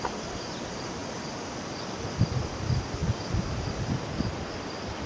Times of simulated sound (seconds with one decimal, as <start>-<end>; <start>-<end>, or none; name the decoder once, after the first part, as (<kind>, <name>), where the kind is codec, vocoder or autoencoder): none

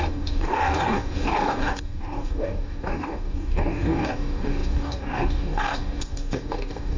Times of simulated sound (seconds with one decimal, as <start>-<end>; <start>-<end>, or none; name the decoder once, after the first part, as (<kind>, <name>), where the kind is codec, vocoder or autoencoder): 0.0-7.0 (codec, DAC)

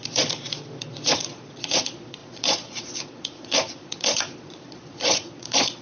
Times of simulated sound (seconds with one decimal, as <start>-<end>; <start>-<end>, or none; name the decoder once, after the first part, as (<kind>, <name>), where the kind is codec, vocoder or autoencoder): 0.0-5.8 (vocoder, Vocos)

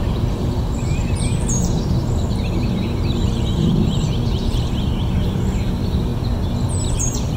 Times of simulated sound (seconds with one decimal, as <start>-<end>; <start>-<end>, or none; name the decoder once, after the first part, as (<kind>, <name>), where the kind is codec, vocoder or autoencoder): 0.0-6.1 (vocoder, BigVGAN v2); 6.7-7.4

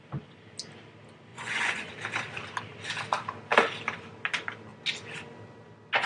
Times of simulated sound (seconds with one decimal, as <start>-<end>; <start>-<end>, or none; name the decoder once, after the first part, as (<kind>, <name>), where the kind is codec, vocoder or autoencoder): 1.3-1.9 (vocoder, Vocos)

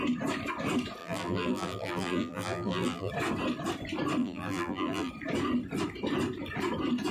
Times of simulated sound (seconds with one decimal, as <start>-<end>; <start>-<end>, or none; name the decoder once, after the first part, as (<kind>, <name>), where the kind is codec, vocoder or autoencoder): 1.0-3.1 (vocoder, BigVGAN v2); 4.2-5.1

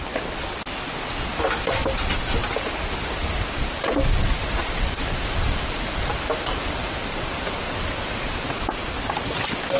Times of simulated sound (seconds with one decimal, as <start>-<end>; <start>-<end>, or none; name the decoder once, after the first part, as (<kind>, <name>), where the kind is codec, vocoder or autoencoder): 4.4-5.6 (vocoder, BigVGAN v2)